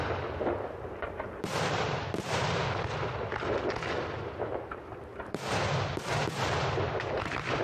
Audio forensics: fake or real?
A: real